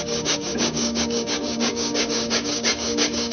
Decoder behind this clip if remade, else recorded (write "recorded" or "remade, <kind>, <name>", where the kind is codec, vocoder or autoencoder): remade, codec, DAC